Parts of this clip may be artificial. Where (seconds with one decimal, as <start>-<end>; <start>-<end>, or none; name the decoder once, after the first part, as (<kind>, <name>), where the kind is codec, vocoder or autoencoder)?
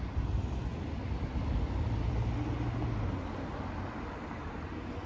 none